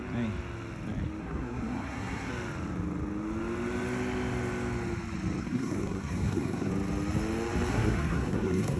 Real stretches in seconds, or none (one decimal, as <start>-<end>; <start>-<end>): 0.0-1.2; 2.3-5.4; 6.7-7.7